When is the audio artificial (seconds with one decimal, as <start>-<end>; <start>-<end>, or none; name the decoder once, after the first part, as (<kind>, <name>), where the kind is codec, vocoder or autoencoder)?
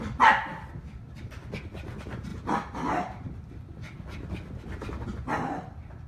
none